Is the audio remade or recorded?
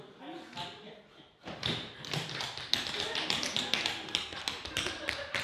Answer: recorded